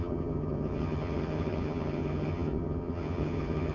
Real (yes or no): no